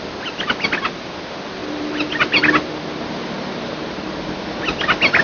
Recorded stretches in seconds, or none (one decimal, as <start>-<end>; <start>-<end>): 0.0-5.2

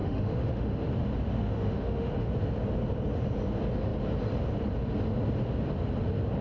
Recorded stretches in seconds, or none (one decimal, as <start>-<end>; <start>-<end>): 0.9-1.4; 2.3-6.4

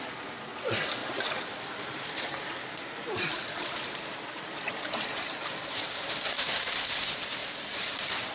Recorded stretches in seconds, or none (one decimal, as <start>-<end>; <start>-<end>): 0.0-1.0; 5.9-8.3

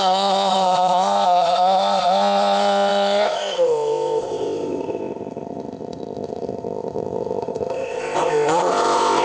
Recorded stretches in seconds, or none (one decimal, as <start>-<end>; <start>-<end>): none